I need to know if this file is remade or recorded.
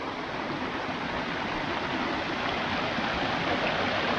recorded